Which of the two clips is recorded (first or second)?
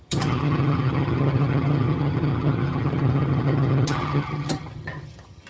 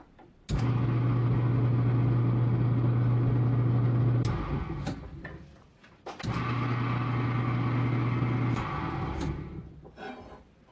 second